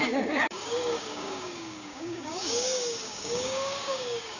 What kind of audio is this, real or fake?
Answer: fake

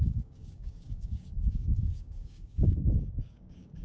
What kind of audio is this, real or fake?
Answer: fake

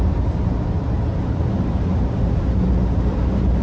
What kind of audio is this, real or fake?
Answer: real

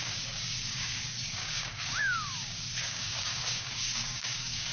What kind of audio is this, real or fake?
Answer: fake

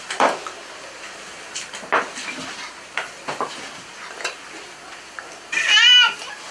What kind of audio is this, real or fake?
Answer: real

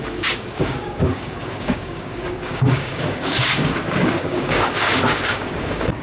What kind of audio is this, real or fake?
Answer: fake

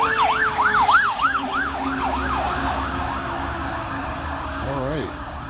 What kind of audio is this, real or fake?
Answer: fake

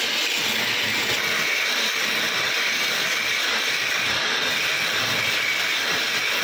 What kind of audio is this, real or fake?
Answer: real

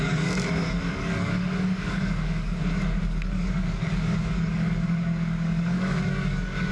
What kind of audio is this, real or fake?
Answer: fake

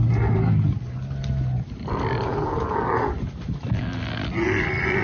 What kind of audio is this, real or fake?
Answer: real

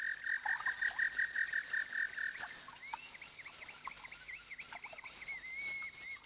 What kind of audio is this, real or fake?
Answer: real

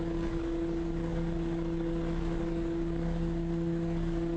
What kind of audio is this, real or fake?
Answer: fake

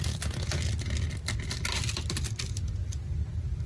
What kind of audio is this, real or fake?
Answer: real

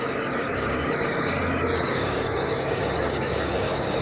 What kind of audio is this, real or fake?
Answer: fake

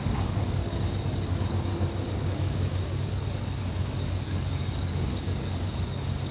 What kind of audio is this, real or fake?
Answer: fake